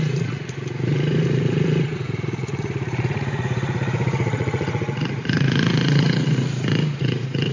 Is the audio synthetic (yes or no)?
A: yes